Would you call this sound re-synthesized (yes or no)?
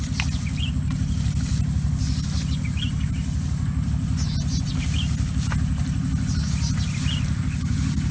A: no